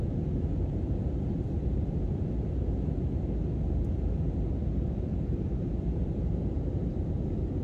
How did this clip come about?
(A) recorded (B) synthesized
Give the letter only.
B